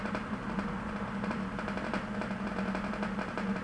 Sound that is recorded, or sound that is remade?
recorded